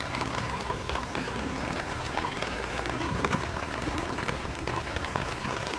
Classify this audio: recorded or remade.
remade